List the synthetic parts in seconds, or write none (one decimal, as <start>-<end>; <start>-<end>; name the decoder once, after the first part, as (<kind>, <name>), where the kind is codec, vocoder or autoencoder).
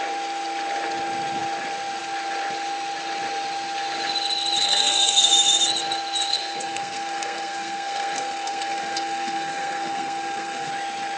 4.6-5.3 (codec, SNAC); 6.3-10.7